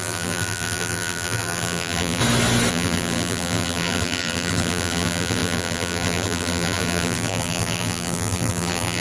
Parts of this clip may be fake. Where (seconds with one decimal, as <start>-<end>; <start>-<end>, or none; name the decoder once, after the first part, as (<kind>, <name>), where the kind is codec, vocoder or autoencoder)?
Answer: 0.0-2.2 (vocoder, BigVGAN v2); 2.7-9.0